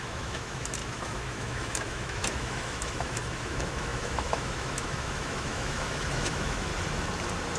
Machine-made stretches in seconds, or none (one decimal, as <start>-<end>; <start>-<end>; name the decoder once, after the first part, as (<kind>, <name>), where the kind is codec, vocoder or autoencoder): 0.0-6.7 (autoencoder, DAC-VAE)